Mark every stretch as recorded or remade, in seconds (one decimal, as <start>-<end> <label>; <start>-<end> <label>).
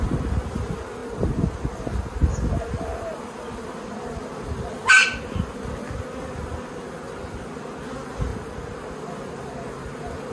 0.0-10.3 recorded